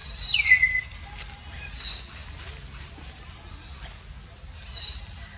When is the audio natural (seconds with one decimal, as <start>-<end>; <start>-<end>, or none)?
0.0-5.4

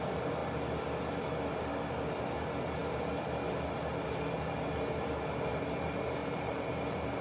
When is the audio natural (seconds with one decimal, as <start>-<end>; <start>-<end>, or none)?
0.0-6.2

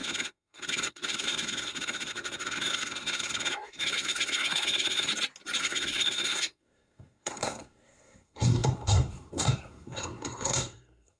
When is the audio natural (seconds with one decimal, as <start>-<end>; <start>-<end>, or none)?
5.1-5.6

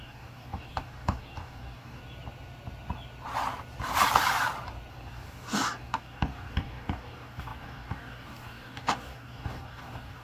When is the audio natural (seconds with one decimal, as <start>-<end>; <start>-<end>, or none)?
2.0-4.9

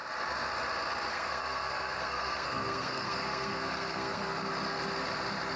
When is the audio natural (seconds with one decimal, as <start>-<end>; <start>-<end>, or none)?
0.0-1.1; 4.5-5.6